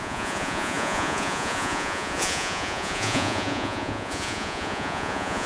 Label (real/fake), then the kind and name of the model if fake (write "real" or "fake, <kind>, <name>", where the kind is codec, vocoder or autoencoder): fake, vocoder, Vocos